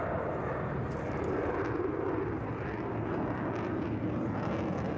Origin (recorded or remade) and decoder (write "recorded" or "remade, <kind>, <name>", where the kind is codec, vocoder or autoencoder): recorded